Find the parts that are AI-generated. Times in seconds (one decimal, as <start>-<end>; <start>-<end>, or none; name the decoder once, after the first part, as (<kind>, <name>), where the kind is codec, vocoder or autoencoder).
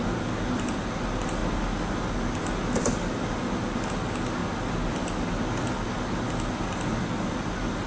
none